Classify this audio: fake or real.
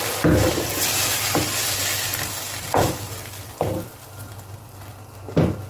real